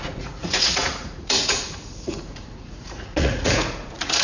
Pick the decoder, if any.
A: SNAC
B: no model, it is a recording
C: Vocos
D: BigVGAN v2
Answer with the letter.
C